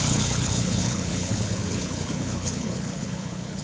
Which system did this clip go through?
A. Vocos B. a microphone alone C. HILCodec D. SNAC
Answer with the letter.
C